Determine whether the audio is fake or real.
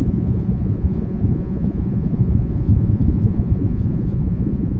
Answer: fake